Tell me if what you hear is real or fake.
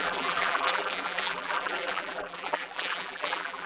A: fake